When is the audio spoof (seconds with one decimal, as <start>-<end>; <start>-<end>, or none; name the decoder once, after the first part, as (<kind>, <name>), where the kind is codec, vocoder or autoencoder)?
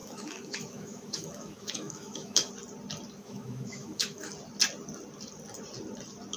0.0-2.5 (autoencoder, DAC-VAE); 3.2-4.3